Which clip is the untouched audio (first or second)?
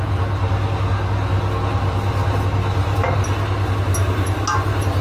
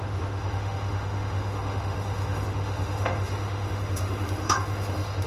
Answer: first